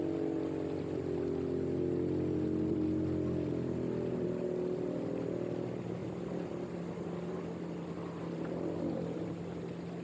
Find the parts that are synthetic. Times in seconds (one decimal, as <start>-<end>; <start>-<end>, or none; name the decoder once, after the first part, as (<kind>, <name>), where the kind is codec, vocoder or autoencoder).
none